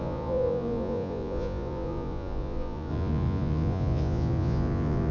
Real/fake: fake